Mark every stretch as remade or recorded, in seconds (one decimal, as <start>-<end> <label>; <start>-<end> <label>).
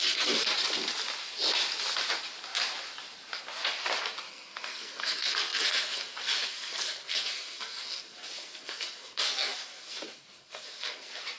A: 0.0-0.5 remade; 0.5-4.3 recorded; 4.3-11.4 remade